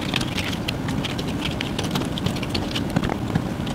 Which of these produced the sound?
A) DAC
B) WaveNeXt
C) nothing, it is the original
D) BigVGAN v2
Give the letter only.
D